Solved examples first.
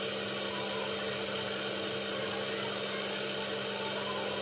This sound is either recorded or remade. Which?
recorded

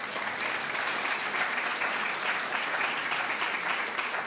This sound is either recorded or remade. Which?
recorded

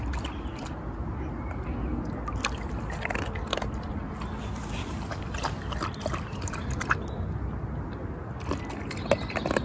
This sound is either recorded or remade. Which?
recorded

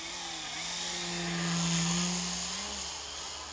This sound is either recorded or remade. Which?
recorded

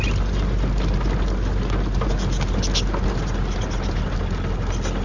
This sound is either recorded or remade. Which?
recorded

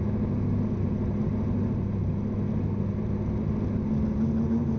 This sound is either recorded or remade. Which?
recorded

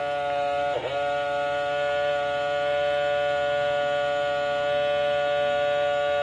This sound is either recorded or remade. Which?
recorded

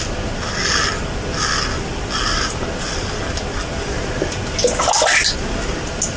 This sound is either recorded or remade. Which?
recorded